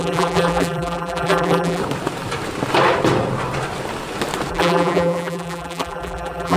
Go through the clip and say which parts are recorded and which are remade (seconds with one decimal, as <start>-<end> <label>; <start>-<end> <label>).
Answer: 0.0-1.8 remade; 1.8-4.5 recorded; 4.5-6.6 remade